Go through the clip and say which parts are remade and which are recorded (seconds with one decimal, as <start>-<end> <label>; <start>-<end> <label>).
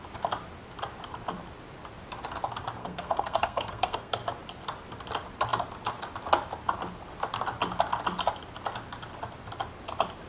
0.0-2.8 recorded; 2.8-4.1 remade; 4.1-10.3 recorded